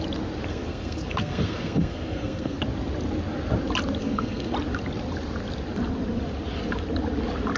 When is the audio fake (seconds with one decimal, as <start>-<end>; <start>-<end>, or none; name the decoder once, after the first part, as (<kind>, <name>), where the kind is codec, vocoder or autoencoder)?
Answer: 0.5-2.6 (codec, SNAC); 4.0-4.5